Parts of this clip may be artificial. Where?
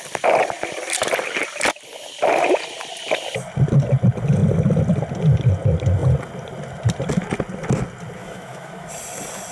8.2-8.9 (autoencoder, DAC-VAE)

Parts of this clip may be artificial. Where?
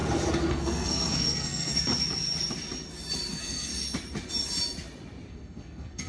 0.5-1.9 (codec, SNAC); 3.3-3.7; 5.3-6.1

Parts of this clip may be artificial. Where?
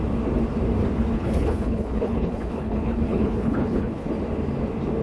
1.1-4.1 (codec, HILCodec)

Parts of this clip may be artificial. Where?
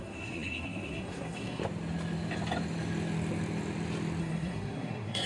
0.0-1.6 (codec, SNAC); 4.2-5.3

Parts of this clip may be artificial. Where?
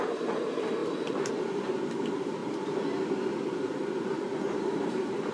0.0-2.4 (vocoder, BigVGAN v2); 4.6-5.3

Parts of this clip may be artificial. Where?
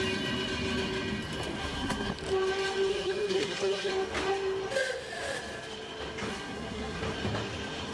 1.6-2.1 (codec, SNAC); 2.9-3.9; 6.3-7.0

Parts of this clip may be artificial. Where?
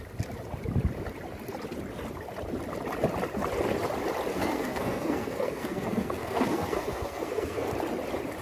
4.3-7.7 (codec, SNAC)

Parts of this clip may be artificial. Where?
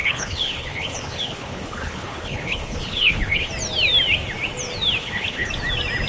0.0-3.5 (codec, HILCodec); 5.0-5.5